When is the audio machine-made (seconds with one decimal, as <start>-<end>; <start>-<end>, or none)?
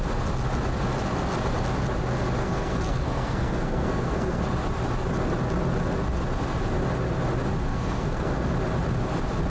2.4-4.4; 7.7-8.5